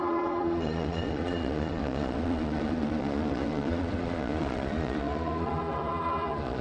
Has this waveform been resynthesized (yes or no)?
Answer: yes